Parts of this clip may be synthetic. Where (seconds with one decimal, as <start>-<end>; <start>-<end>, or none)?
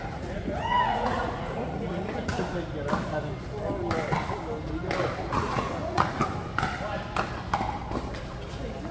0.0-2.3; 5.3-6.2